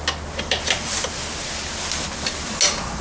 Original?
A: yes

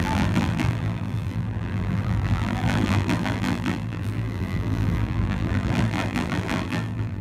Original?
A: no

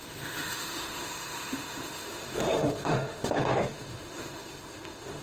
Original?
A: no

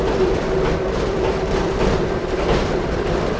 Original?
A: no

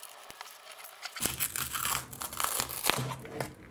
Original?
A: yes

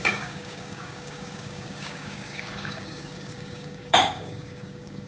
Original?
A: no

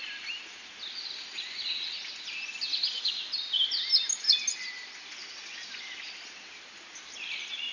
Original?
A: yes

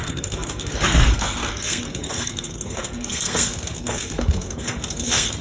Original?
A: no